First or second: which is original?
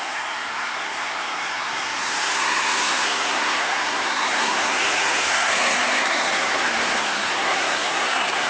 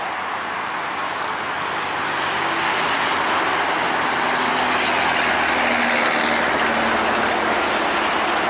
second